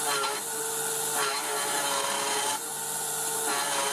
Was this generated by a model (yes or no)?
no